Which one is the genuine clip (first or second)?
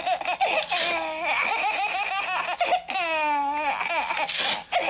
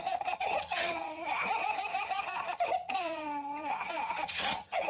first